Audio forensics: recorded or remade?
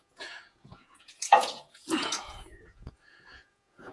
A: remade